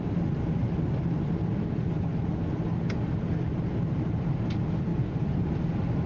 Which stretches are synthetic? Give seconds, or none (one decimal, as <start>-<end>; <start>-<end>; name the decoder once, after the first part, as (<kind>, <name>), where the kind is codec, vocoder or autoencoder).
0.6-1.4 (vocoder, BigVGAN v2); 4.9-5.4